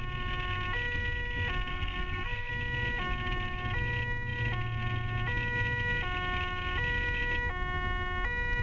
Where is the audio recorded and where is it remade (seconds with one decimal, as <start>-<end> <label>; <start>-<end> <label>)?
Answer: 0.0-1.7 recorded; 1.7-2.5 remade; 2.5-8.6 recorded